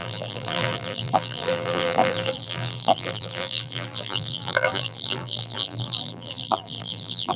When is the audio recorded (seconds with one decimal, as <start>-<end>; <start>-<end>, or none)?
none